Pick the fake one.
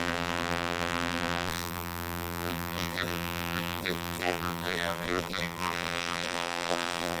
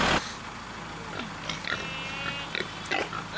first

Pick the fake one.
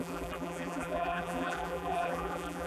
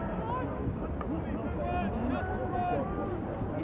first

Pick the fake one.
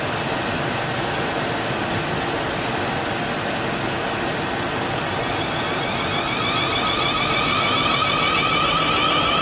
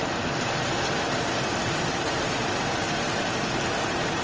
second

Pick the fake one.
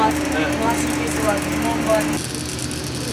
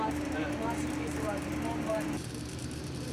second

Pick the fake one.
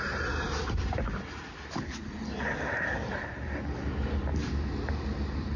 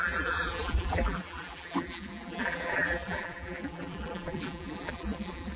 second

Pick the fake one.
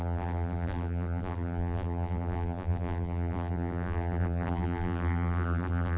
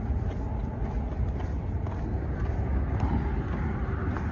first